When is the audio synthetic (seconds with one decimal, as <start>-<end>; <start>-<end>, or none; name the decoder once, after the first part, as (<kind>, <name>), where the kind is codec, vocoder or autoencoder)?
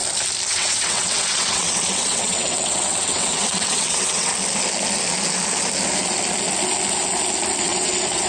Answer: 0.5-4.3 (vocoder, WaveNeXt); 7.6-8.3